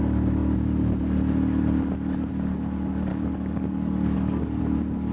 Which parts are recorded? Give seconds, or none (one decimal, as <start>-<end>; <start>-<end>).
0.0-3.1; 4.6-5.1